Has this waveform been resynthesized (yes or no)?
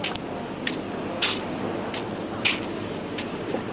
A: no